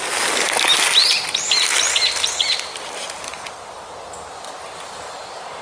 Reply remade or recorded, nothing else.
recorded